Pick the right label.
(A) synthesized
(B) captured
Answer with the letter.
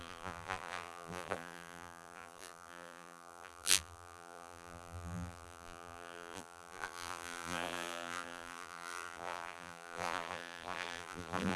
A